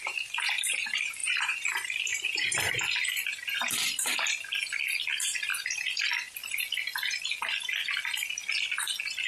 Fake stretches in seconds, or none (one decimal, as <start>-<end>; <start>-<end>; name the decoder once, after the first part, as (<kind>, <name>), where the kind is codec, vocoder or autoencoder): 0.0-4.1 (vocoder, BigVGAN v2); 5.1-5.5